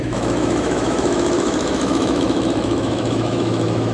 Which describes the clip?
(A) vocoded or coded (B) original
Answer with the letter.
A